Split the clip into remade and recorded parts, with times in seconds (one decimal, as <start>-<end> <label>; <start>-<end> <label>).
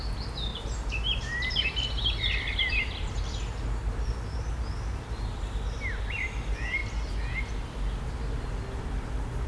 0.0-0.5 recorded; 0.5-3.7 remade; 3.7-9.5 recorded